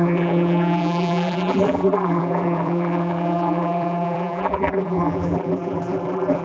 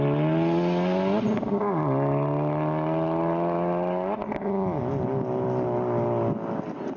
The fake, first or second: first